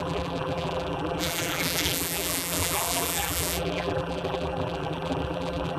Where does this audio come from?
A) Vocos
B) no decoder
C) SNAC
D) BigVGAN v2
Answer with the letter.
D